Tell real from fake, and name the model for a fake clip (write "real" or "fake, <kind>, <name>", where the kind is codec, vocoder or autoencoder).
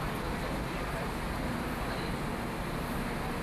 real